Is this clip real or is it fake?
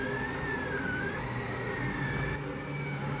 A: real